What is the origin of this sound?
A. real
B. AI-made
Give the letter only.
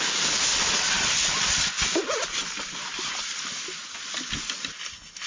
A